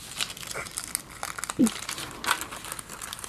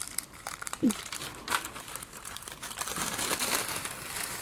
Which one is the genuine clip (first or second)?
first